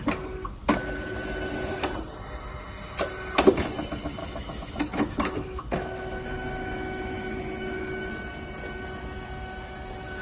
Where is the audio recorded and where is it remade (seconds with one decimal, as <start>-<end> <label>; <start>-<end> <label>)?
0.0-4.2 recorded; 4.2-8.1 remade; 8.1-10.2 recorded